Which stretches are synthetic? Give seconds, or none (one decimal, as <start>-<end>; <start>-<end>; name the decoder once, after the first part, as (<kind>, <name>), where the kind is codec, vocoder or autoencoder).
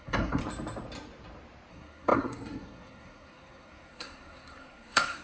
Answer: 0.0-0.4 (codec, SNAC); 1.7-5.2